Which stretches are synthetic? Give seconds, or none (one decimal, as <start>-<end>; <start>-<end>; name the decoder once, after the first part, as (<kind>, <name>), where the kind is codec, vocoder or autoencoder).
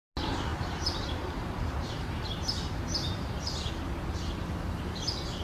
0.5-3.7 (vocoder, BigVGAN v2)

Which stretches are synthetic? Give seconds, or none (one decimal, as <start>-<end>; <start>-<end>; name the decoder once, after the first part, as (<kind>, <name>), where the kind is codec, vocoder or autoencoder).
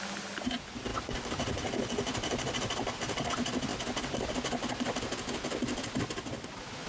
0.9-3.3 (vocoder, BigVGAN v2); 3.7-4.3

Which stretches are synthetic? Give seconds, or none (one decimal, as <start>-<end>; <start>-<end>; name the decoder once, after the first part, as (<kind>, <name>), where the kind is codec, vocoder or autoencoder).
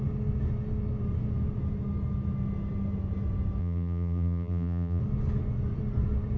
3.6-5.0 (vocoder, BigVGAN v2)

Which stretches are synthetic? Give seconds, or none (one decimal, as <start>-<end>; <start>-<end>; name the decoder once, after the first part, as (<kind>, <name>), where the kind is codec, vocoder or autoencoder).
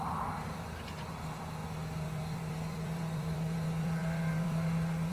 1.6-5.1 (vocoder, BigVGAN v2)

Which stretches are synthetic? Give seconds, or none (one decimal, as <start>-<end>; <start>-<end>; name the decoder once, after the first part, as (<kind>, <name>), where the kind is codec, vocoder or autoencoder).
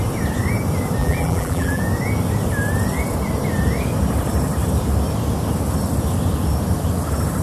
1.0-1.8 (vocoder, BigVGAN v2)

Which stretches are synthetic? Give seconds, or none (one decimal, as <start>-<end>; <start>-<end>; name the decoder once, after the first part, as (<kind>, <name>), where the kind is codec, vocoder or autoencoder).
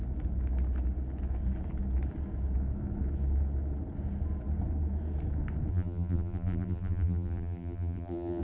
5.7-8.4 (vocoder, BigVGAN v2)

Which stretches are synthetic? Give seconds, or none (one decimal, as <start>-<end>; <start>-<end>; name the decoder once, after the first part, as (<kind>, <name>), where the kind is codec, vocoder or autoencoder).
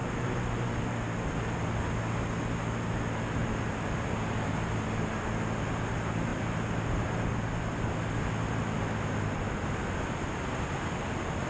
0.0-0.9 (vocoder, BigVGAN v2); 3.4-4.7